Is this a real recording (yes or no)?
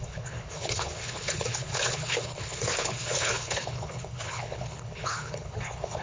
no